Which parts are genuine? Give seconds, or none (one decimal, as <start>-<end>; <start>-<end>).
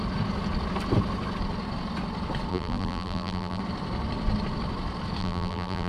0.0-2.5; 3.6-5.2